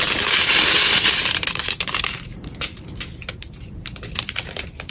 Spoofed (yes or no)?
yes